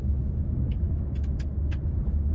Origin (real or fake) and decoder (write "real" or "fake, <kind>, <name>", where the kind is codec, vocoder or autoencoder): fake, autoencoder, DAC-VAE